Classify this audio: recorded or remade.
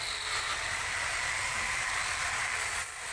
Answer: remade